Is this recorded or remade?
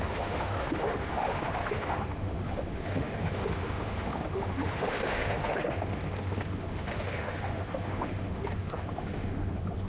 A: remade